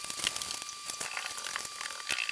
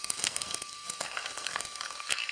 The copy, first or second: second